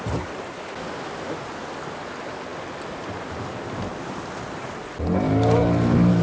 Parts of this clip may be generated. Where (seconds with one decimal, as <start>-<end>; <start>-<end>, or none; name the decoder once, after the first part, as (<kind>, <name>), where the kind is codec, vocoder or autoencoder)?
none